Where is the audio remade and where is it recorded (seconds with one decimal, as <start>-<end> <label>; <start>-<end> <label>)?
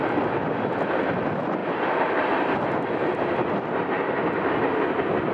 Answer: 0.0-5.3 recorded